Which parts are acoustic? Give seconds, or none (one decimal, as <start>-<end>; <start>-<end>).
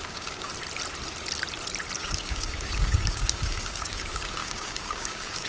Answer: 0.5-2.0